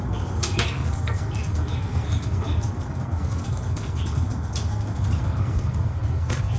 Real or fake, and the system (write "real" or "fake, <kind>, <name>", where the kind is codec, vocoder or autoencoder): fake, codec, SNAC